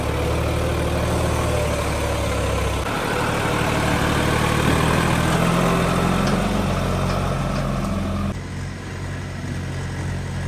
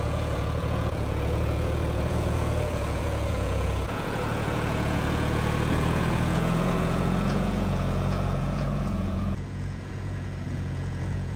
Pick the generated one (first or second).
second